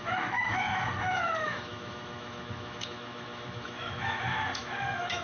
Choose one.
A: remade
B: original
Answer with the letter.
A